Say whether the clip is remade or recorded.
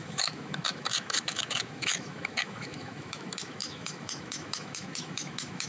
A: remade